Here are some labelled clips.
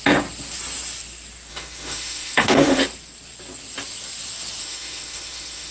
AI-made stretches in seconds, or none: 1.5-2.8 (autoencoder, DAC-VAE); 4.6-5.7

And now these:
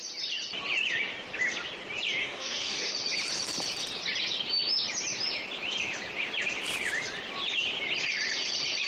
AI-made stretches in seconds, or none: 2.2-2.9 (codec, DAC)

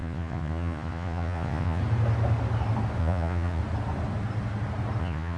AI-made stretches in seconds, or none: 0.0-1.8 (vocoder, Vocos); 3.0-3.6; 5.0-5.4

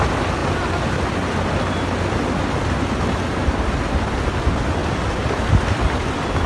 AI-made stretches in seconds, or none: 4.8-6.5 (vocoder, BigVGAN v2)